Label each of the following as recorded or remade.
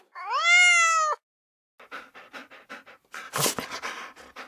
recorded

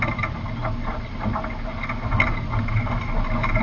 recorded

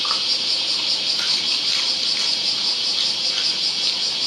recorded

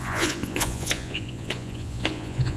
remade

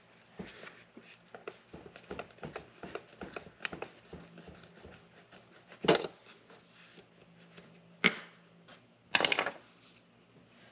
recorded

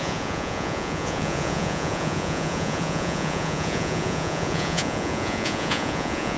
remade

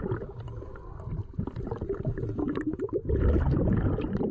recorded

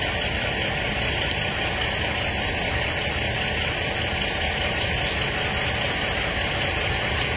recorded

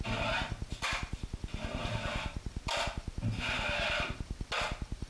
recorded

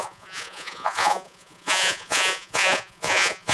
remade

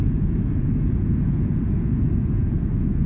remade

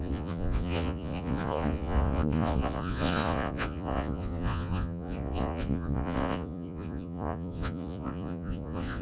remade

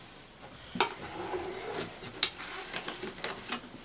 recorded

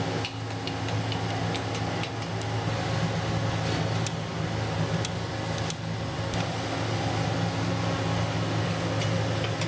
recorded